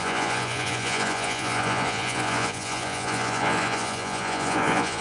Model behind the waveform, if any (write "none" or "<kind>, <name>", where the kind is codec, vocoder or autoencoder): vocoder, Vocos